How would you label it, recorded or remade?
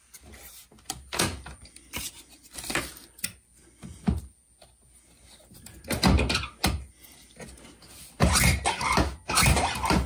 recorded